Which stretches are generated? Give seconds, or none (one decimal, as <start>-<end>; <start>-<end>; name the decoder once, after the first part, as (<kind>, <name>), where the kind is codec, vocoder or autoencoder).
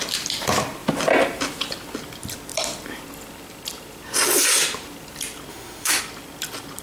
5.5-6.0 (autoencoder, DAC-VAE)